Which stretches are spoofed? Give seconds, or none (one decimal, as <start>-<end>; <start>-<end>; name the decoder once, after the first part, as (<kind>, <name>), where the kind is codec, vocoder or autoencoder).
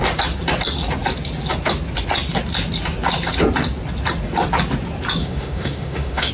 5.2-6.3 (autoencoder, DAC-VAE)